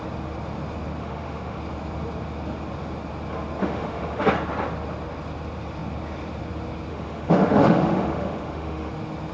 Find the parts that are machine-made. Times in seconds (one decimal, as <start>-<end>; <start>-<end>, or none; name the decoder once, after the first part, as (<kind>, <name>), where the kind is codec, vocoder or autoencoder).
1.0-1.6 (autoencoder, DAC-VAE); 3.6-4.3; 6.9-8.9